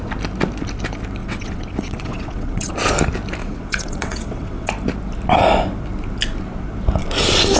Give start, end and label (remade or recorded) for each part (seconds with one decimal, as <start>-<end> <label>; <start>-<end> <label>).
0.0-1.2 recorded; 1.2-2.7 remade; 2.7-3.4 recorded; 3.4-4.7 remade; 4.7-7.6 recorded